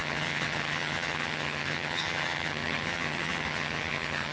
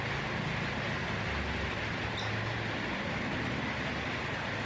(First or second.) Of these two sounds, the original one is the second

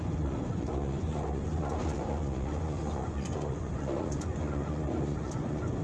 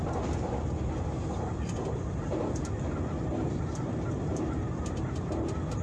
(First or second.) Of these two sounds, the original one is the second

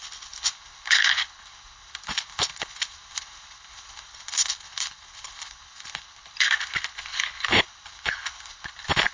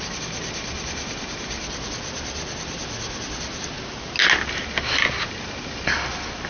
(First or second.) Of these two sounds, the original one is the second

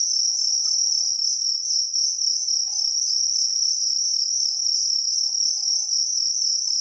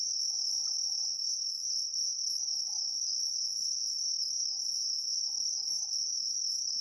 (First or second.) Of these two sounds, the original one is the first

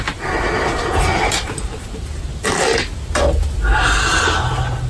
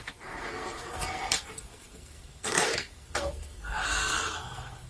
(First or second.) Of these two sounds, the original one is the first